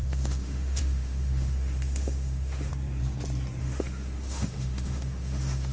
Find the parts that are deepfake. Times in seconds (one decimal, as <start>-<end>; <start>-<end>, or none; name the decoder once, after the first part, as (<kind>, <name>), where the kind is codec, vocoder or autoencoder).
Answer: 0.0-2.7 (autoencoder, DAC-VAE); 3.6-5.7